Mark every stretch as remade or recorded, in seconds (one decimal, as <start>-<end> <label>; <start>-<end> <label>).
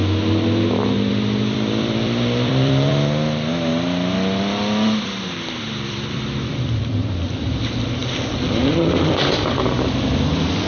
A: 0.0-1.1 recorded; 1.1-2.9 remade; 2.9-4.4 recorded; 4.4-8.0 remade; 8.0-8.7 recorded; 8.7-10.7 remade